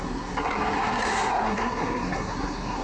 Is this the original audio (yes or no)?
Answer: no